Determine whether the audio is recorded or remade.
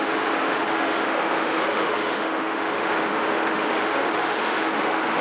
remade